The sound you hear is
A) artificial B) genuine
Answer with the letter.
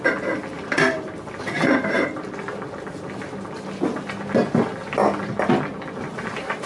B